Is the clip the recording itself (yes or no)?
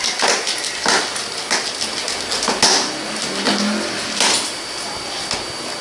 yes